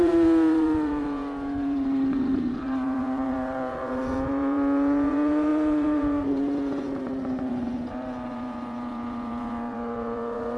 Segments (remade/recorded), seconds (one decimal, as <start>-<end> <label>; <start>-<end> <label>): 0.0-10.6 remade